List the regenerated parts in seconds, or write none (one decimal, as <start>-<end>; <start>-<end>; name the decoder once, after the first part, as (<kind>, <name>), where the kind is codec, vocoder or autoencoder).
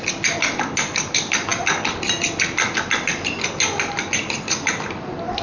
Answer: none